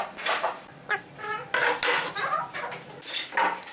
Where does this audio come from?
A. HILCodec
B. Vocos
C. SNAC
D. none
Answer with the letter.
D